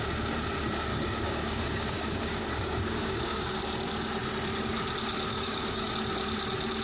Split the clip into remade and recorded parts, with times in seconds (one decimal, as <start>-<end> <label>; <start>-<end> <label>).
0.0-0.9 recorded; 0.9-3.6 remade; 3.6-5.3 recorded; 5.3-5.9 remade; 5.9-6.8 recorded